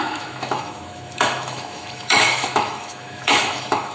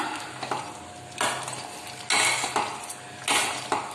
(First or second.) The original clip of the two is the second